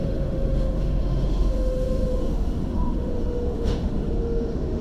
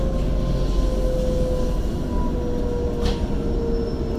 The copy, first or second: first